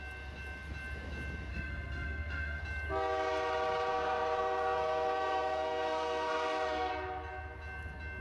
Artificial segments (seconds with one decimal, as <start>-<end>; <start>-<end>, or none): 1.5-2.6; 3.9-6.9